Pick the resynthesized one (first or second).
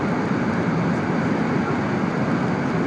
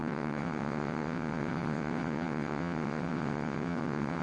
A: second